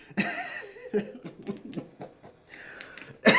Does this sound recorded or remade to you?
recorded